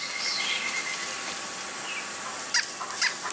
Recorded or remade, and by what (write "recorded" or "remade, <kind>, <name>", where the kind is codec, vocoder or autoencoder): recorded